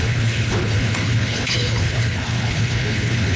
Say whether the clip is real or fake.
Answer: fake